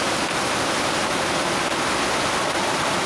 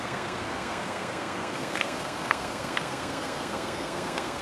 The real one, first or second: first